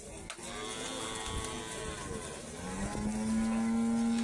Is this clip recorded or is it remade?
recorded